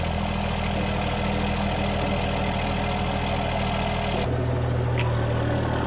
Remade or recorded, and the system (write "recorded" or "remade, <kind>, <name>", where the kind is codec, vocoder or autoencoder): recorded